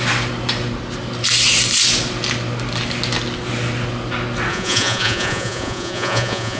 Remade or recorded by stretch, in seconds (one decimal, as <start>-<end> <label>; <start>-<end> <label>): 0.0-4.5 recorded; 4.5-6.6 remade